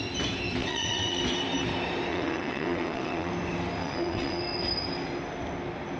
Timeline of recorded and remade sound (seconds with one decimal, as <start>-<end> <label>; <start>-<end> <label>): 0.0-0.6 recorded; 0.6-1.2 remade; 1.2-2.1 recorded; 2.1-3.3 remade; 3.3-3.8 recorded; 3.8-4.4 remade; 4.4-6.0 recorded